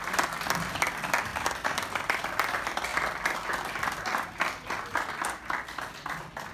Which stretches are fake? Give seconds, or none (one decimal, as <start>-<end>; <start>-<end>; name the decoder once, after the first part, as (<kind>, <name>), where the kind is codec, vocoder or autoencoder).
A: none